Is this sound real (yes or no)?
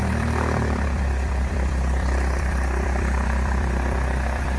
no